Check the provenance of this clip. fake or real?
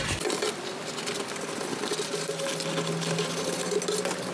real